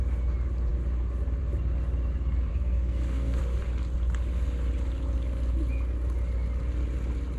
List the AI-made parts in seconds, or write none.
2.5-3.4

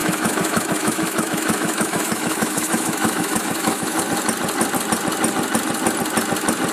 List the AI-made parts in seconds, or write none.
0.0-4.0

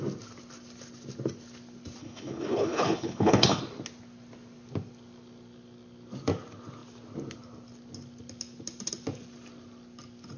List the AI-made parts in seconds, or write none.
2.0-3.6

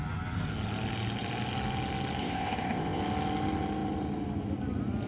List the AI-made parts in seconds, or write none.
2.2-3.0

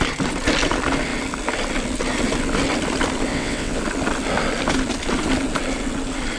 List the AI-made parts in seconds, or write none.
3.3-3.8

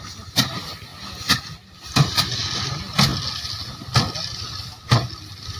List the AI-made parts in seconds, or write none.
none